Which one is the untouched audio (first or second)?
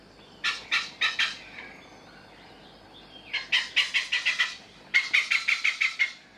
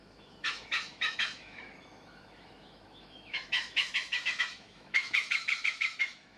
first